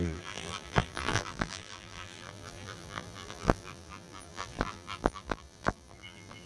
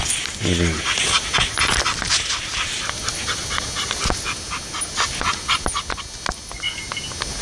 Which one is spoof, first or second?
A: first